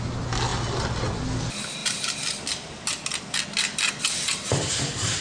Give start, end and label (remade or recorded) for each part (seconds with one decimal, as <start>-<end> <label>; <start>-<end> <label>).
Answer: 0.0-5.2 recorded